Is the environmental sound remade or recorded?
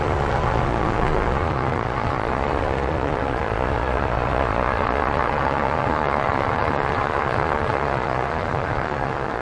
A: remade